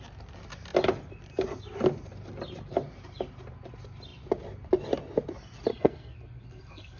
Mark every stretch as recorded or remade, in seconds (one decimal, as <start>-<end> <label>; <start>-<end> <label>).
0.0-5.7 recorded; 5.7-7.0 remade